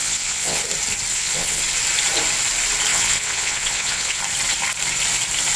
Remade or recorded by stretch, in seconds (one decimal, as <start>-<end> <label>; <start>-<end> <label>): 0.0-0.6 remade; 0.6-1.1 recorded; 1.1-1.6 remade; 1.6-2.9 recorded; 2.9-4.2 remade; 4.2-5.6 recorded